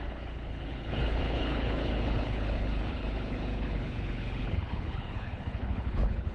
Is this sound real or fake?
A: fake